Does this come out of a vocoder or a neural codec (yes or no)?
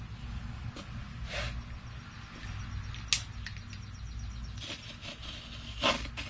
no